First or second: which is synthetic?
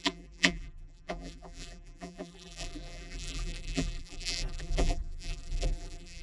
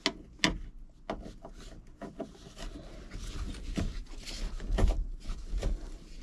first